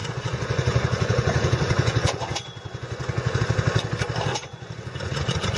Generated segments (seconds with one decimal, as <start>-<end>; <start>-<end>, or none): 0.0-3.4; 4.3-5.6